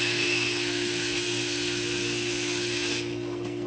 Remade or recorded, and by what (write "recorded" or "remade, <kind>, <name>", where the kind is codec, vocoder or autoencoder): remade, codec, SNAC